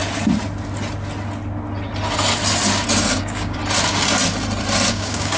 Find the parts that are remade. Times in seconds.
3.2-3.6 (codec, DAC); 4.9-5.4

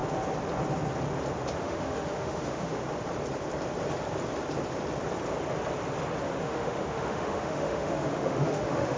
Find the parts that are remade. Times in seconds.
1.6-2.8 (autoencoder, DAC-VAE); 6.4-9.0

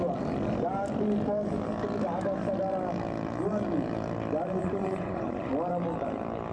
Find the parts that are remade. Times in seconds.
4.6-5.5 (vocoder, Vocos)

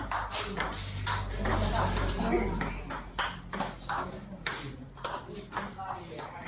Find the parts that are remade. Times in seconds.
none

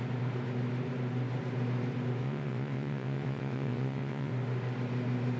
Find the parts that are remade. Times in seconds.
2.2-4.3 (vocoder, WaveNeXt)

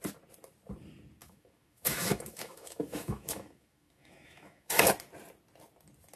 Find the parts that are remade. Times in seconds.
1.2-4.9 (autoencoder, DAC-VAE)

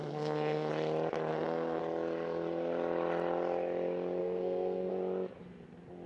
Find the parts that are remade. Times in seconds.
0.0-0.7 (codec, SNAC); 1.3-1.8; 4.2-4.9

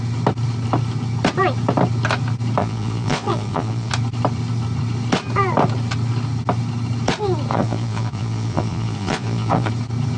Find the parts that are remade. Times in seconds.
2.6-3.9 (vocoder, Vocos); 7.5-9.7